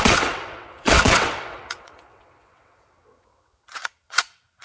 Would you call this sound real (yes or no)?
no